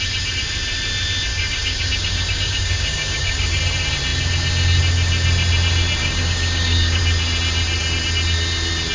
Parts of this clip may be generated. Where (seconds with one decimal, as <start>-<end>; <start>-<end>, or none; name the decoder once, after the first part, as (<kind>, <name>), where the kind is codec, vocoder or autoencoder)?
1.3-3.6 (codec, DAC); 6.0-7.0